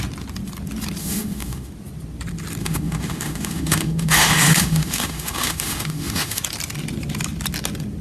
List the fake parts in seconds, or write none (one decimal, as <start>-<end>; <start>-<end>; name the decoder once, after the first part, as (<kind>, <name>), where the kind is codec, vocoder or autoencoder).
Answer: 1.0-1.7 (autoencoder, DAC-VAE); 2.6-6.4